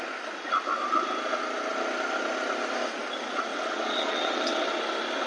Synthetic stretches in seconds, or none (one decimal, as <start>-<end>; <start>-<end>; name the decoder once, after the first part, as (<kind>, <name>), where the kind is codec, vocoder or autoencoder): 3.5-4.8 (vocoder, WaveNeXt)